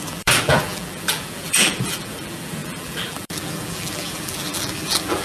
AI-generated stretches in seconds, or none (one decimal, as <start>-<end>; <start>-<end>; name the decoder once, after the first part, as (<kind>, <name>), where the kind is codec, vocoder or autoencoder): 0.0-5.2 (vocoder, BigVGAN v2)